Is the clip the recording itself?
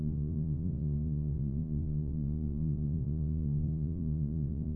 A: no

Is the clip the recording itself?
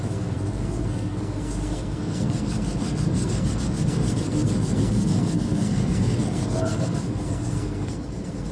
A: no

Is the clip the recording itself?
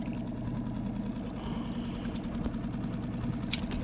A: yes